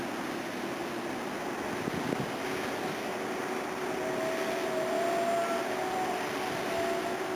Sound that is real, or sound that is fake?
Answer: real